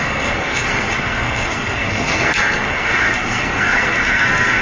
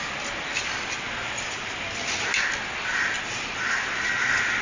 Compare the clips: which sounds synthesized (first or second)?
first